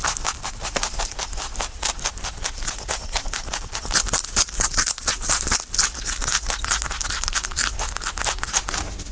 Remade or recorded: recorded